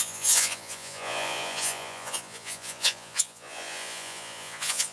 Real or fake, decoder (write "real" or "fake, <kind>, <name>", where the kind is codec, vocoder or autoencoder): fake, vocoder, Vocos